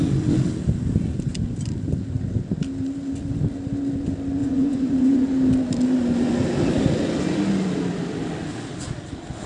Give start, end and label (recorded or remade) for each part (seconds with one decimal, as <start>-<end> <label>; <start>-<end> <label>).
0.0-4.4 recorded; 4.4-5.3 remade; 5.3-9.5 recorded

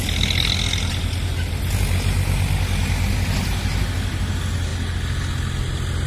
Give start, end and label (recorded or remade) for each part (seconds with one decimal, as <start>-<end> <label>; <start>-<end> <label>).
0.0-6.1 recorded

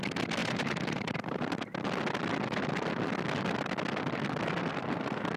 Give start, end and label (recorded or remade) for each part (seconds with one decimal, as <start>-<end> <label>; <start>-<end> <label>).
0.0-0.4 recorded; 0.4-1.5 remade; 1.5-5.4 recorded

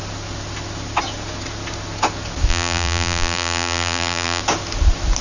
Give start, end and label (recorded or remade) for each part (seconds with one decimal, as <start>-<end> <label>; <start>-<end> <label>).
0.0-2.5 recorded; 2.5-4.4 remade; 4.4-5.2 recorded

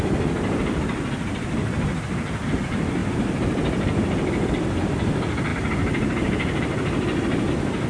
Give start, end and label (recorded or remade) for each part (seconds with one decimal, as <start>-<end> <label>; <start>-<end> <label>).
0.0-3.0 recorded; 3.0-4.5 remade; 4.5-5.5 recorded; 5.5-7.5 remade; 7.5-7.9 recorded

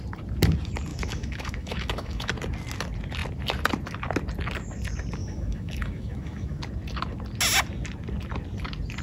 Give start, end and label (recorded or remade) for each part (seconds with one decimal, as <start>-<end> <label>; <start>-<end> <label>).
0.0-0.9 recorded; 0.9-2.3 remade; 2.3-5.2 recorded; 5.2-6.6 remade; 6.6-9.0 recorded

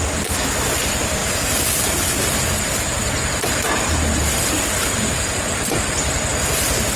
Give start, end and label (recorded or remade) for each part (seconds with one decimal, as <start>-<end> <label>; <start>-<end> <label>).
0.0-7.0 recorded